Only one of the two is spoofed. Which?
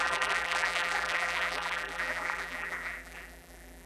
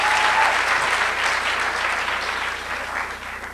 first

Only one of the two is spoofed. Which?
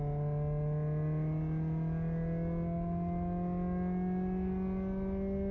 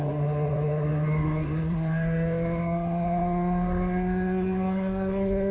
second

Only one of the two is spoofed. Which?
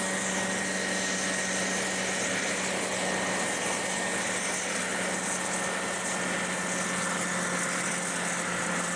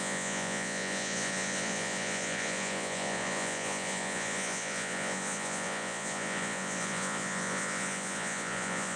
second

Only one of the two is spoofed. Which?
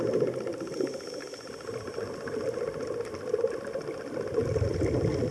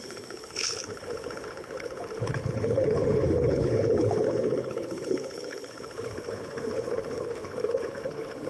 second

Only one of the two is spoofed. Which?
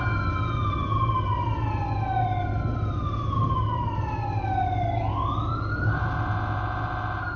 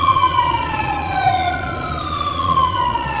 second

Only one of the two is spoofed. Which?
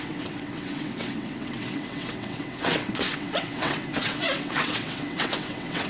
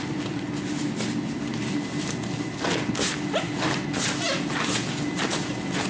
first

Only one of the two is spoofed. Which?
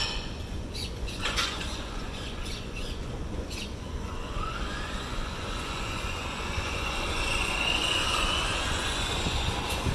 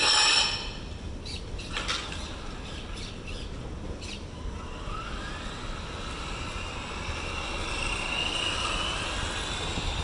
first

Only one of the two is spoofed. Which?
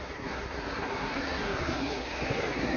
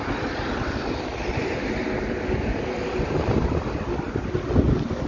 first